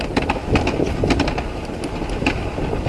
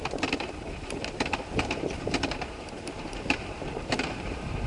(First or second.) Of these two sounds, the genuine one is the first